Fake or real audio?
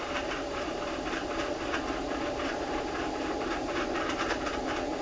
fake